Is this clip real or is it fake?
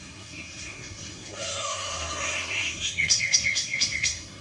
fake